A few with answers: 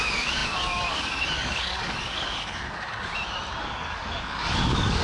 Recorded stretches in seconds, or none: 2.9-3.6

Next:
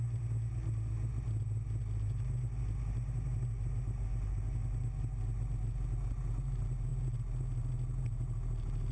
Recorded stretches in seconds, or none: 0.0-8.9

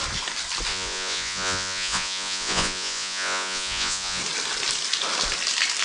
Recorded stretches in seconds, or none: 0.0-0.7; 4.2-5.8

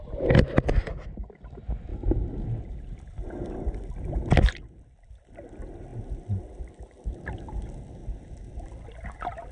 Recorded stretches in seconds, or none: 0.0-1.9; 5.1-9.5